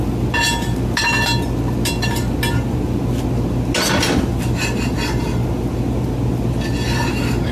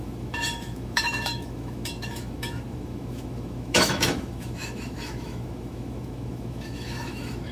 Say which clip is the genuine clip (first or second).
first